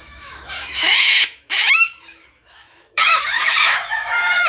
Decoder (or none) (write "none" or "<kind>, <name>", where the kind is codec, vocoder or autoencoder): autoencoder, DAC-VAE